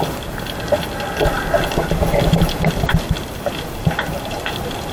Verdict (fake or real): real